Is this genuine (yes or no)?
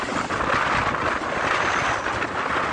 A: yes